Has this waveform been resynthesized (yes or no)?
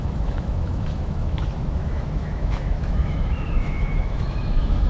yes